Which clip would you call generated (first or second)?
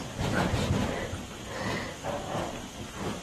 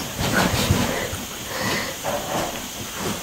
second